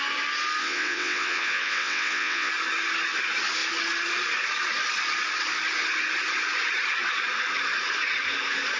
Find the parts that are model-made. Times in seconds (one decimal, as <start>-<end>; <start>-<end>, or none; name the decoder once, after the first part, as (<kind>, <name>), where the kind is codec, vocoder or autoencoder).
0.6-2.5 (vocoder, WaveNeXt)